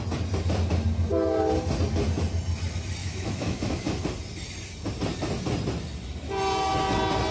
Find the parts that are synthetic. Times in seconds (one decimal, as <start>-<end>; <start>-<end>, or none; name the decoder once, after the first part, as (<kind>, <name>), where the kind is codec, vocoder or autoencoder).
3.0-3.9 (autoencoder, DAC-VAE)